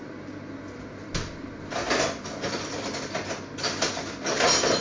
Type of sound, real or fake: real